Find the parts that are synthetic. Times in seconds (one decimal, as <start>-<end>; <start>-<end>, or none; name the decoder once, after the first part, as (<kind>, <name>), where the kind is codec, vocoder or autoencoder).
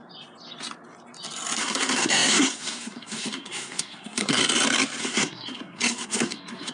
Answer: 1.6-4.4 (codec, SNAC); 5.0-6.7